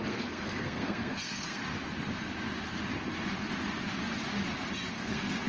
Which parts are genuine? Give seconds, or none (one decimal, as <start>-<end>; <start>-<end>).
1.6-4.9